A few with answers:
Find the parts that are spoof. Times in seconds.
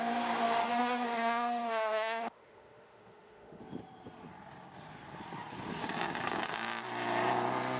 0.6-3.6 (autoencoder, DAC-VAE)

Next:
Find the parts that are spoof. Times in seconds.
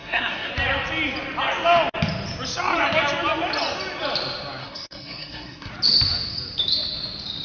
0.0-0.5 (codec, SNAC); 4.6-5.7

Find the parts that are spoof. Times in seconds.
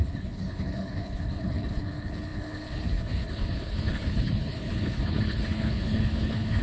0.0-6.6 (codec, HILCodec)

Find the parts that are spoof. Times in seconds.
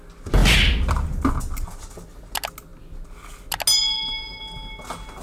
none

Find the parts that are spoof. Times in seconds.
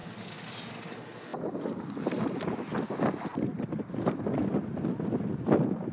none